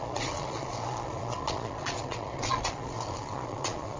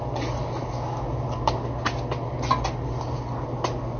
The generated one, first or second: first